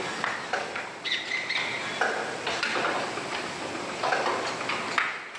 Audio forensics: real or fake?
real